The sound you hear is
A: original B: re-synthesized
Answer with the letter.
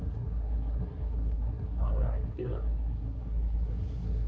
B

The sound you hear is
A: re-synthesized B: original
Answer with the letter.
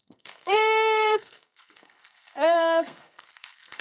A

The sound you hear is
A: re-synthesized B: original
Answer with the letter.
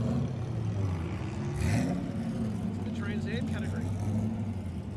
B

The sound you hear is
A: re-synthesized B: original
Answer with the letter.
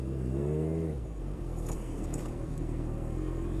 A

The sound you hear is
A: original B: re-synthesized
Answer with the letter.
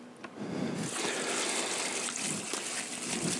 A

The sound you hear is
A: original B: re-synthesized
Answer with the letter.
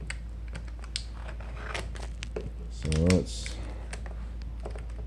A